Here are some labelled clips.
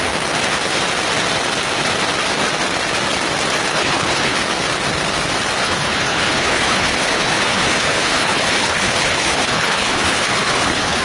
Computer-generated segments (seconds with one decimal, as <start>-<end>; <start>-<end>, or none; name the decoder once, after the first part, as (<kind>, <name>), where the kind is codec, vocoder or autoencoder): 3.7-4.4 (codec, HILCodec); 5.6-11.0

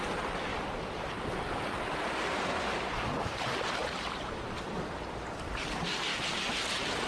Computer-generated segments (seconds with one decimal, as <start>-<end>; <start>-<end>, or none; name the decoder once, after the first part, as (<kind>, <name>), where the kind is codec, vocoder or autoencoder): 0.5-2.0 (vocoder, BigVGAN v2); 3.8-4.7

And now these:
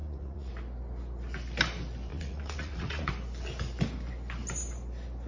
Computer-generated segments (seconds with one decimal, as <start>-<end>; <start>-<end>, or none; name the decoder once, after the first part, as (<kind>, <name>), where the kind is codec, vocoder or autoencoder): 0.0-0.5 (vocoder, Vocos); 2.1-3.1

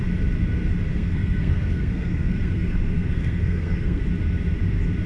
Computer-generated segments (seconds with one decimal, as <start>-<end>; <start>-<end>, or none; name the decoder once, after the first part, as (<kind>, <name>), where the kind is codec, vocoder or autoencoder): 0.9-4.0 (codec, SNAC)

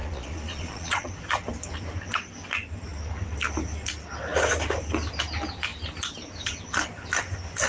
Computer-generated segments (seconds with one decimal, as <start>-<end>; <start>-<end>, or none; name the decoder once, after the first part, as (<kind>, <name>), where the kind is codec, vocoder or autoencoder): 0.0-1.1 (vocoder, Vocos)